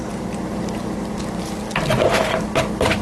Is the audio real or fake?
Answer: real